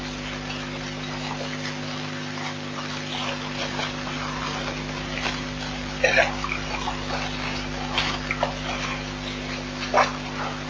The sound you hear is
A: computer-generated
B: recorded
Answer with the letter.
B